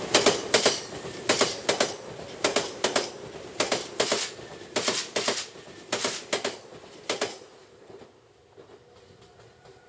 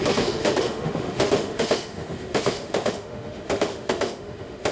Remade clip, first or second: second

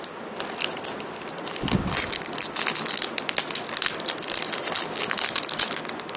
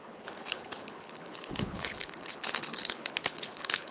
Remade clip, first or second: second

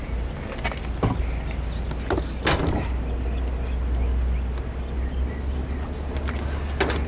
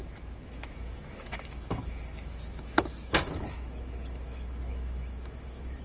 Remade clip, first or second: second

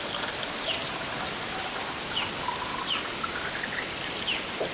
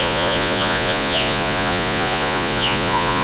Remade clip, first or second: second